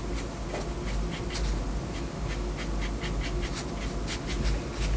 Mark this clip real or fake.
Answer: real